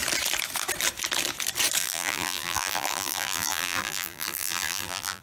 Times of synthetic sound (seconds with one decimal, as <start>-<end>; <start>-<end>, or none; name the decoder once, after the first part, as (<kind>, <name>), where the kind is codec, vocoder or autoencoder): 1.8-5.2 (vocoder, BigVGAN v2)